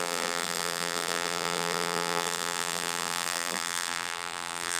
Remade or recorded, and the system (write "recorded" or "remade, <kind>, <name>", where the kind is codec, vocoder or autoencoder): remade, vocoder, BigVGAN v2